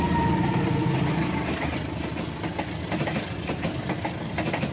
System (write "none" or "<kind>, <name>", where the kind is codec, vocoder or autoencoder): none